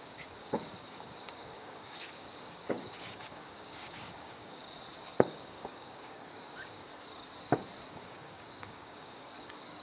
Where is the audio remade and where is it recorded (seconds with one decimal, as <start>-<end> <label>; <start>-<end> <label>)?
0.0-4.6 remade; 4.6-5.2 recorded; 5.2-6.9 remade; 6.9-7.9 recorded; 7.9-9.8 remade